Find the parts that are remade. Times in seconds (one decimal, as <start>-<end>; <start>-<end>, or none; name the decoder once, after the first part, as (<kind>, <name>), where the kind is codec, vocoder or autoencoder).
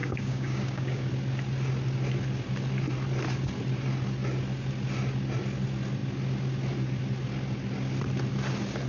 0.0-1.1 (codec, DAC)